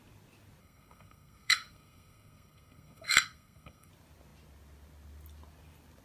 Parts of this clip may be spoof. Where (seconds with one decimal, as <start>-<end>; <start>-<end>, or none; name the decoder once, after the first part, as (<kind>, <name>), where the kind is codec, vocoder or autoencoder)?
0.6-3.9 (codec, SNAC)